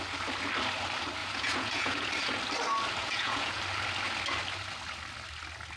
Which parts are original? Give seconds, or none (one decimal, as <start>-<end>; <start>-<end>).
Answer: 0.0-1.2; 2.1-3.0; 3.6-5.8